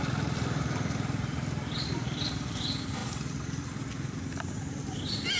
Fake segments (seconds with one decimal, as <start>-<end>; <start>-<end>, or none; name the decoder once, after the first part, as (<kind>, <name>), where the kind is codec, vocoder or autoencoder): none